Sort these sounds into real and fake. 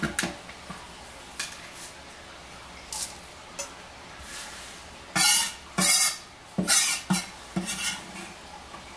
real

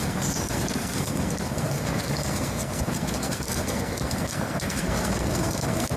fake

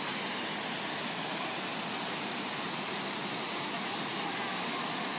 real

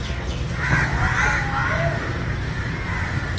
real